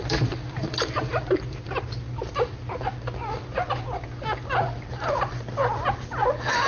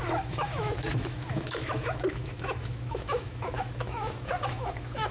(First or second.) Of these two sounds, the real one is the first